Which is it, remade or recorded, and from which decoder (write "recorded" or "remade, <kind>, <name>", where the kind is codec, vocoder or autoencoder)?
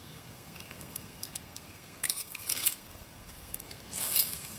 remade, codec, SNAC